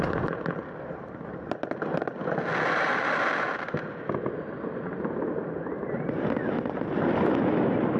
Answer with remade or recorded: recorded